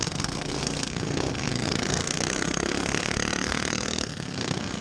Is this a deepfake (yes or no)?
yes